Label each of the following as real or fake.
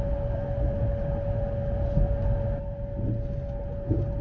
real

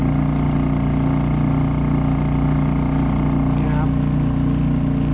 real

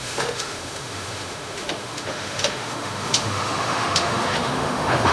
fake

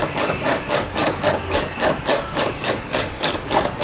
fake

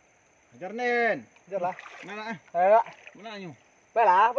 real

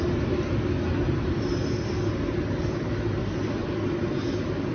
real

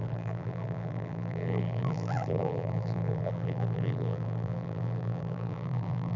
fake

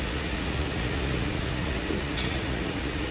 fake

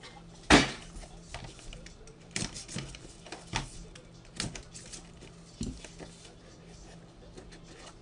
real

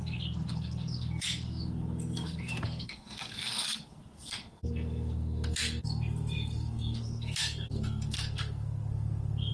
fake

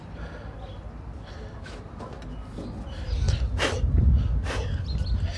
real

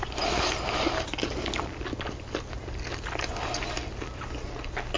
real